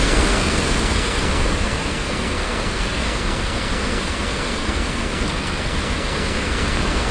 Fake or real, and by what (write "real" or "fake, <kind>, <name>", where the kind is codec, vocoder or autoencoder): fake, codec, SNAC